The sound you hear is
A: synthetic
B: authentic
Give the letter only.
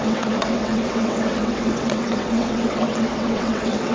A